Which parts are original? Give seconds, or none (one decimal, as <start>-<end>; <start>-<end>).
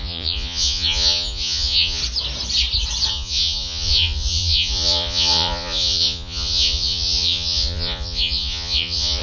2.0-3.1